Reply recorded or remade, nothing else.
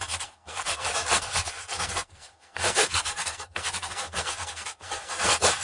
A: remade